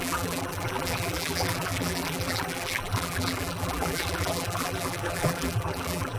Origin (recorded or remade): remade